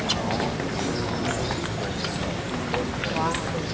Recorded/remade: recorded